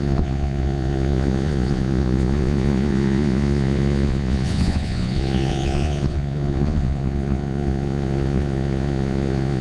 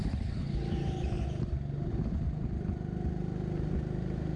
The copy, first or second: first